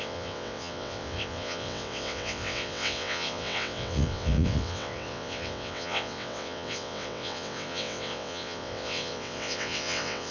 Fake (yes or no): yes